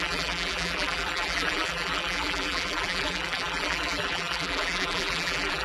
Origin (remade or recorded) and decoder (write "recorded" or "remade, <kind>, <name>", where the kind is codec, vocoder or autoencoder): remade, vocoder, BigVGAN v2